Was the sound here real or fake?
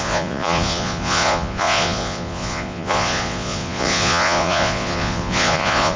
fake